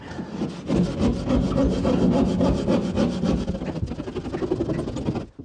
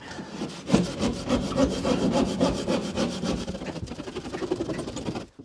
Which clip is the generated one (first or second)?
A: second